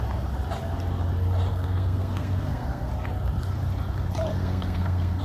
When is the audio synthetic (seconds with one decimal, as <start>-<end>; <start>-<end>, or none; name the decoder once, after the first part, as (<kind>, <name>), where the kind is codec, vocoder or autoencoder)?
1.5-2.9 (codec, SNAC); 4.3-5.2

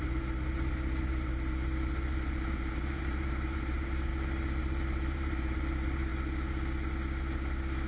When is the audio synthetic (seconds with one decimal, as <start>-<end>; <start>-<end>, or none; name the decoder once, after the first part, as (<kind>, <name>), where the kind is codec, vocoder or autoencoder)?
0.0-4.1 (vocoder, BigVGAN v2); 4.6-6.1

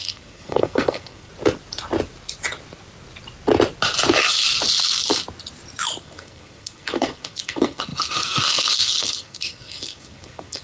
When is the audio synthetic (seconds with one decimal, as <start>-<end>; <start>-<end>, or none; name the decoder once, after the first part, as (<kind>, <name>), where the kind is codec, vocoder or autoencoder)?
0.0-1.3 (codec, SNAC); 6.0-10.6